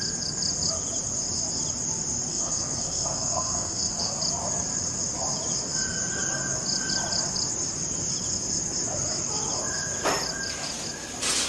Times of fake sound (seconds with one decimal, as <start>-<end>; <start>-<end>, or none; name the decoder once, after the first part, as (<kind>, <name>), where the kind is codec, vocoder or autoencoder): 2.3-4.2 (codec, SNAC)